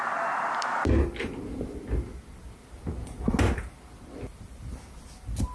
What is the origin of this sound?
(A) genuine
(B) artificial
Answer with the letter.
A